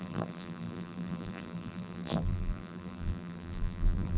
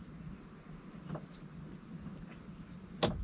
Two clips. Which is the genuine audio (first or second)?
second